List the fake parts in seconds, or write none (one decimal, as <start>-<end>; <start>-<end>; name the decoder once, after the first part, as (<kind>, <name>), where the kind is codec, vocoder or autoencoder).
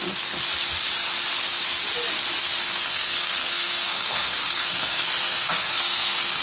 2.7-6.4 (codec, SNAC)